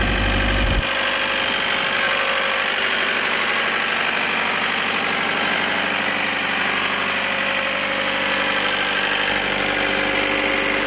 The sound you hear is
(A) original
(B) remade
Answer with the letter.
A